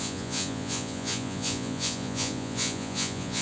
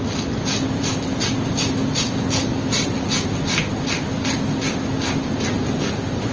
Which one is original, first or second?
second